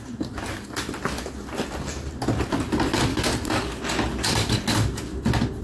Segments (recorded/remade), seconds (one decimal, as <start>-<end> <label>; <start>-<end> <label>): 0.0-3.1 recorded; 3.1-3.8 remade; 3.8-5.6 recorded